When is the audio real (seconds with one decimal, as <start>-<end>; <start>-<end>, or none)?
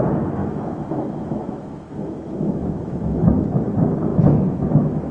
0.0-0.4; 3.5-4.1